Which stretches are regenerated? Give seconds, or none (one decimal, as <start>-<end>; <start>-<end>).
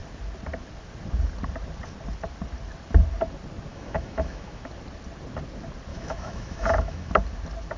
3.7-4.7; 5.9-7.1